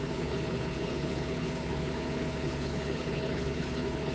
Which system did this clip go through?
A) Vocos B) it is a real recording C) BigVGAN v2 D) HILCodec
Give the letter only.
D